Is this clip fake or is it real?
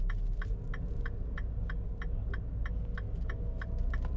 real